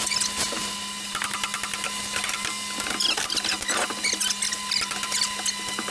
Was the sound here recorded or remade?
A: recorded